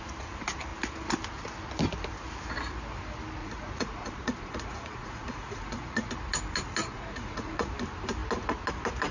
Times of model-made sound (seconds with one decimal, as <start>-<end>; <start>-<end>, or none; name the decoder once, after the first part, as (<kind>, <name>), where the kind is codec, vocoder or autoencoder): 3.4-6.1 (vocoder, Vocos); 6.8-7.7